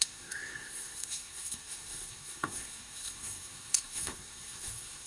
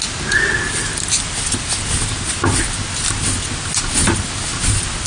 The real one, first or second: second